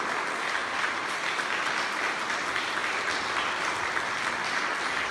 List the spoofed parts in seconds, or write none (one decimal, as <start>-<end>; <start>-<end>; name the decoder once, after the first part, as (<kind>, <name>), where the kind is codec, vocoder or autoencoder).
none